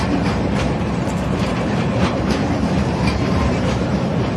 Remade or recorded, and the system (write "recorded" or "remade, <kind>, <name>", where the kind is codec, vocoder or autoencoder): remade, vocoder, BigVGAN v2